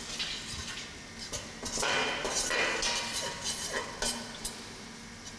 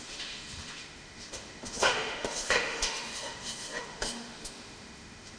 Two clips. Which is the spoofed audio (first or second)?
second